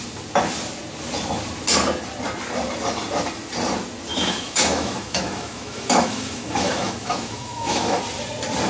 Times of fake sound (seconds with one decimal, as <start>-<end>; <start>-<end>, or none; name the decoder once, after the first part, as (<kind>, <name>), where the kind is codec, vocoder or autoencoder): 4.1-8.0 (autoencoder, DAC-VAE)